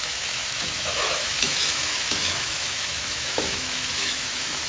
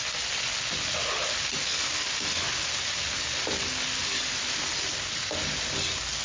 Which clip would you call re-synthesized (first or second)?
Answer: first